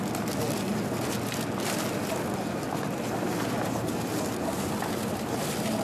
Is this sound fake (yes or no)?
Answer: no